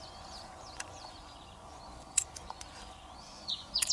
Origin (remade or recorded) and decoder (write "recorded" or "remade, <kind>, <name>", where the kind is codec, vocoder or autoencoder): remade, vocoder, Vocos